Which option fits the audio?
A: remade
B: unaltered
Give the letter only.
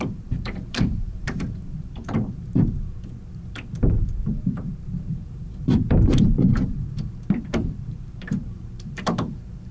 A